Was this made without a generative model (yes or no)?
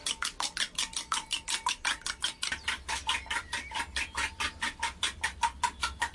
yes